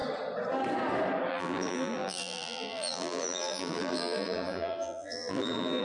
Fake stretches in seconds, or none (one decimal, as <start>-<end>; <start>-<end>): 1.3-5.8